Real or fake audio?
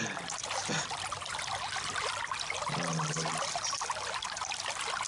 real